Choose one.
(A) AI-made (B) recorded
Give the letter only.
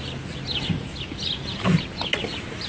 B